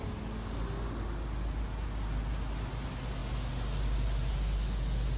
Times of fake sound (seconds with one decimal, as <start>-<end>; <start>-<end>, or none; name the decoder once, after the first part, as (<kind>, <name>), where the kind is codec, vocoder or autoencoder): none